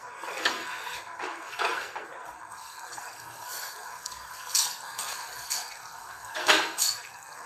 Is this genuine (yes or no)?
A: no